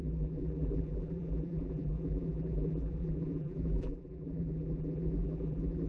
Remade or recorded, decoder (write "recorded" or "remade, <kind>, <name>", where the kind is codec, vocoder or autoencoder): remade, vocoder, BigVGAN v2